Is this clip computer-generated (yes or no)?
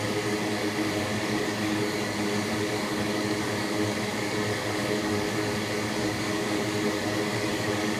yes